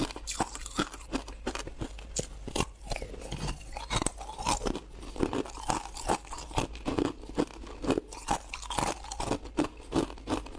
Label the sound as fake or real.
real